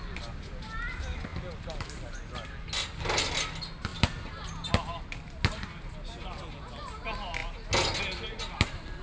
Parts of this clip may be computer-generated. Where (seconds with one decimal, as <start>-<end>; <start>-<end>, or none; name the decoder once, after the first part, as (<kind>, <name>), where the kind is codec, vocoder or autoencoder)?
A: none